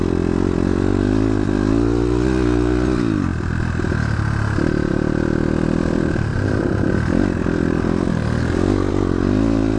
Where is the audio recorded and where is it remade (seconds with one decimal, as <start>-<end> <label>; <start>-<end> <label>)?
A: 0.0-3.3 remade; 3.3-4.9 recorded; 4.9-9.8 remade